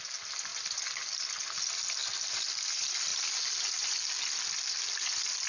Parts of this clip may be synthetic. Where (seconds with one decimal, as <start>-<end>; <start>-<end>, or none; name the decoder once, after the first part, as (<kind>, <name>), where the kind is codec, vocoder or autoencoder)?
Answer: 0.5-1.4 (vocoder, BigVGAN v2); 2.0-2.6